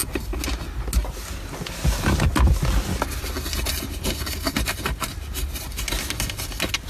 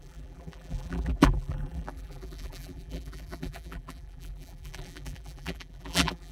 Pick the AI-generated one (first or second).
second